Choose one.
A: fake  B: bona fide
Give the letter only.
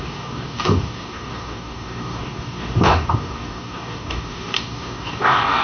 A